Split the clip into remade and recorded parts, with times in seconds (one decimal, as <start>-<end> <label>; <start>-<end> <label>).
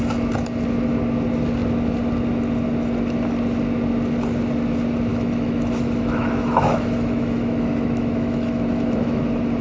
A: 0.0-5.1 recorded; 5.1-9.2 remade; 9.2-9.6 recorded